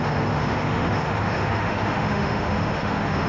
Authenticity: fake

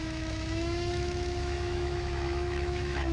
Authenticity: fake